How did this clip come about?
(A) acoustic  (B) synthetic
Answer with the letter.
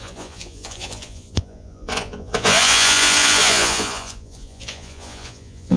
B